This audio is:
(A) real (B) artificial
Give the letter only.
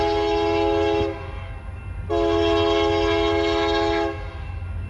A